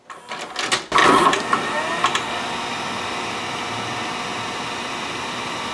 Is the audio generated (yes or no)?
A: no